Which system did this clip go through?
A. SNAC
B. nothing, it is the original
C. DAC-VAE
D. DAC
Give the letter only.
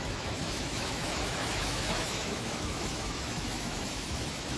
C